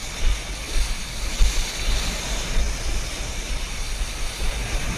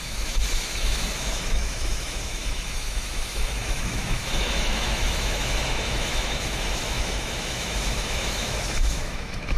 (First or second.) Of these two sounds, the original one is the first